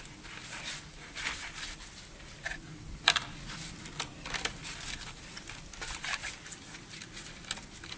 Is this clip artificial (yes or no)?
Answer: no